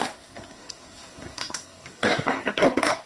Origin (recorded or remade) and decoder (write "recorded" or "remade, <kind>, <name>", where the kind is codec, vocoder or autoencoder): remade, codec, SNAC